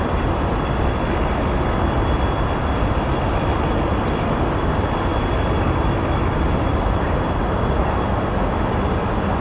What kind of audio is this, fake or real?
real